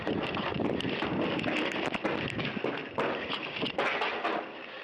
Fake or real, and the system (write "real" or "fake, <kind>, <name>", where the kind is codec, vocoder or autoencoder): real